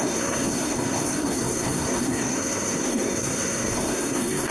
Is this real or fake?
fake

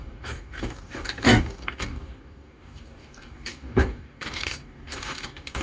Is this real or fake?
fake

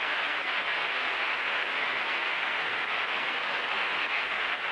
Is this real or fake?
fake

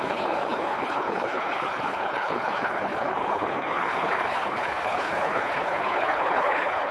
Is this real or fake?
fake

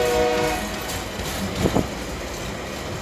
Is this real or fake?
real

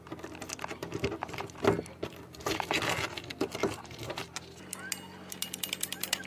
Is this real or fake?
real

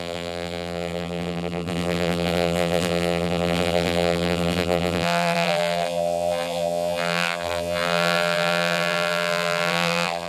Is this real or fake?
fake